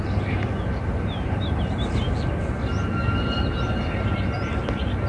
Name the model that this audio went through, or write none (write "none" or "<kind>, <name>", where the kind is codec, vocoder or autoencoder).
none